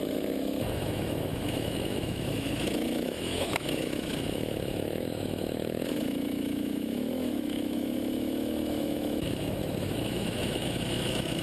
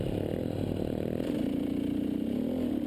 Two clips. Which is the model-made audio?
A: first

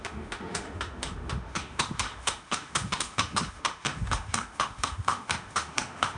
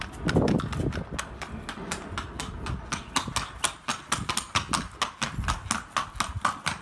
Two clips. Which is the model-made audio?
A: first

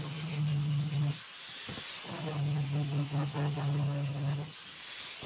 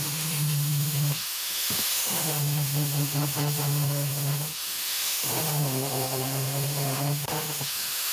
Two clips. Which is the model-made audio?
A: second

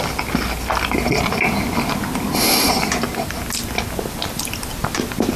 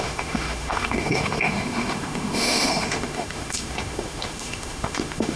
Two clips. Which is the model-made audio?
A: second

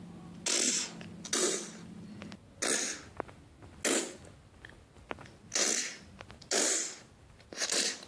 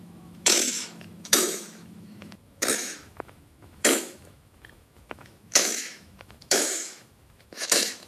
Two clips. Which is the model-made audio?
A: second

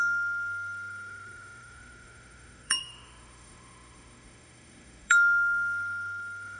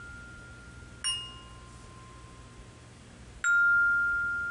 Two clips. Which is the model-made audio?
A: first